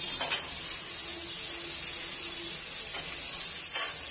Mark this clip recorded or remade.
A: recorded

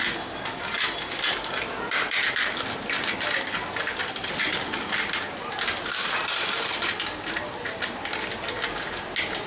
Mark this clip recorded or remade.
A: recorded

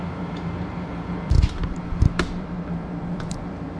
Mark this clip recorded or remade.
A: remade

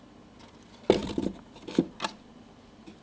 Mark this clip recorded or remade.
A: recorded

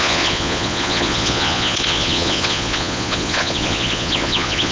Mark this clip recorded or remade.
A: remade